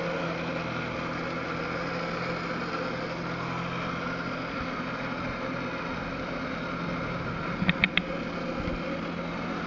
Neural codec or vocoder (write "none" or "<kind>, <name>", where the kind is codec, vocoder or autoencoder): none